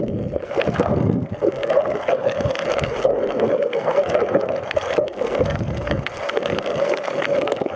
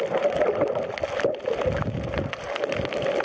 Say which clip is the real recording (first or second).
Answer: second